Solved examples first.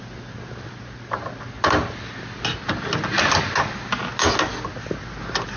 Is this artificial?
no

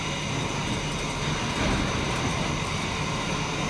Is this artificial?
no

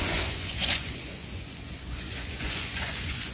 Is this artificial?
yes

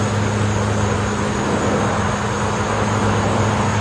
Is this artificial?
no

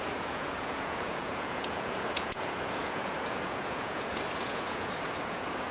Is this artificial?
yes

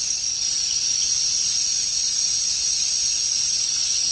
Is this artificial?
no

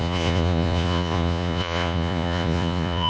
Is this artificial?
yes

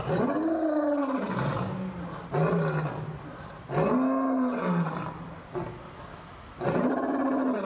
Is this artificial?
no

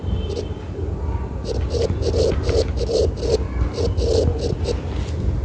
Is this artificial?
no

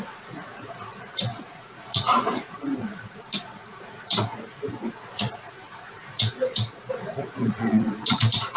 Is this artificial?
yes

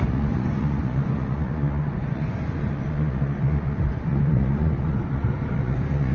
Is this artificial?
yes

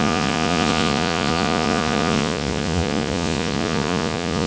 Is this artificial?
yes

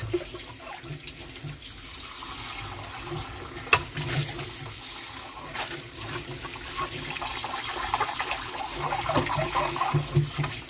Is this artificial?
no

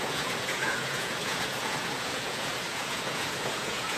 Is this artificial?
yes